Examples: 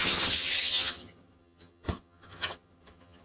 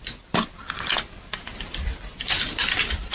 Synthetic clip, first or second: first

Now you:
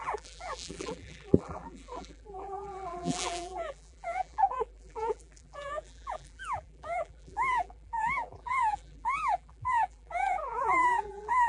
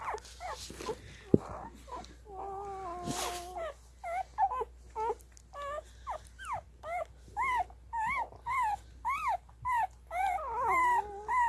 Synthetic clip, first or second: first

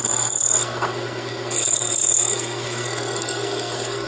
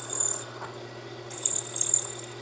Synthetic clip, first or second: first